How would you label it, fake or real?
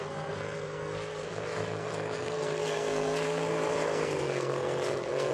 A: fake